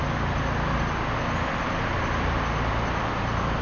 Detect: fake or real real